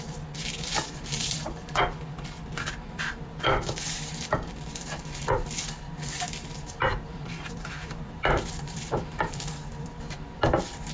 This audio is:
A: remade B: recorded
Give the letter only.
A